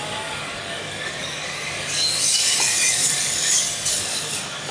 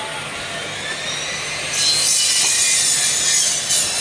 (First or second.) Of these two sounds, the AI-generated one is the first